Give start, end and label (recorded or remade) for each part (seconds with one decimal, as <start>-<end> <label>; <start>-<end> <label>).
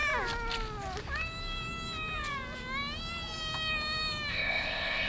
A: 0.0-4.3 recorded; 4.3-5.1 remade